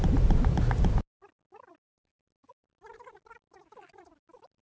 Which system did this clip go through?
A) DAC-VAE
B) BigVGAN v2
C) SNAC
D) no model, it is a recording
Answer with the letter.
D